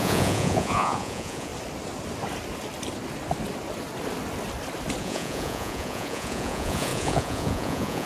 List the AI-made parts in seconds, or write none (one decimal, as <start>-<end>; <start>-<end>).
0.0-1.5; 5.0-8.1